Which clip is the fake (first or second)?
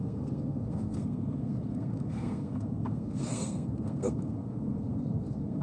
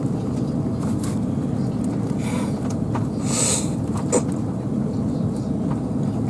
first